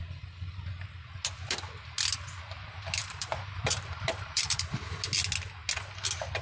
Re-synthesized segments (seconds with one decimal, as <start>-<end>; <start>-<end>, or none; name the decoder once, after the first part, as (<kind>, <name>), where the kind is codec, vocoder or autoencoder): 3.0-4.7 (vocoder, BigVGAN v2)